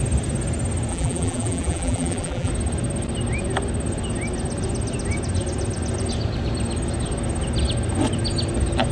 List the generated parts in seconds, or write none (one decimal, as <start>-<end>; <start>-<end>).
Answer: 0.9-2.5